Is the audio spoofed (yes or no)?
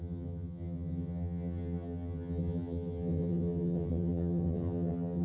yes